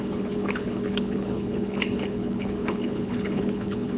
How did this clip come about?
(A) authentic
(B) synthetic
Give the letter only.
B